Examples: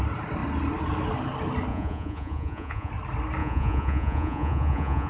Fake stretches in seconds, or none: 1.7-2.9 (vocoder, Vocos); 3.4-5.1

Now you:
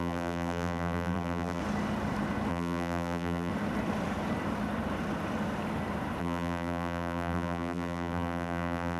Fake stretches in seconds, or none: 0.0-1.6 (vocoder, BigVGAN v2); 2.5-3.5; 6.2-9.0